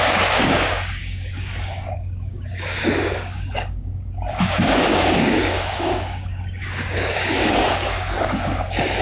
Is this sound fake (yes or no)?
yes